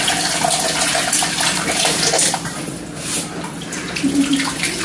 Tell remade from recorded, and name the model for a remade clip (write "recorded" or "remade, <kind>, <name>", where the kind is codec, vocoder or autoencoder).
recorded